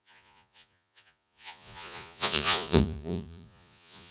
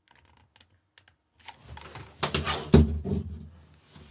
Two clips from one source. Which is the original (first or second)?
second